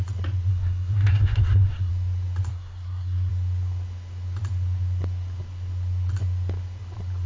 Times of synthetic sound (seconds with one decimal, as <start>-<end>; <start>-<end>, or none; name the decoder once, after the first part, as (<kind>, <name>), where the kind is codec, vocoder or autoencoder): 0.5-1.9 (codec, SNAC); 2.5-3.3